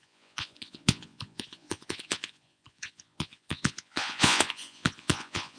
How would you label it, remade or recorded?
remade